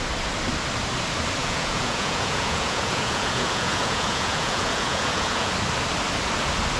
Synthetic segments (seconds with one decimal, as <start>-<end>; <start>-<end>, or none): 1.4-5.5